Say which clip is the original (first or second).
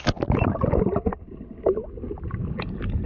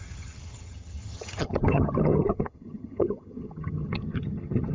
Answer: first